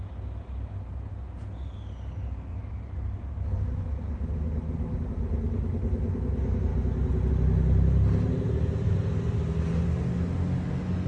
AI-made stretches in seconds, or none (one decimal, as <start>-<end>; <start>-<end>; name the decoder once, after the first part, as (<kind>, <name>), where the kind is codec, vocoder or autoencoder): none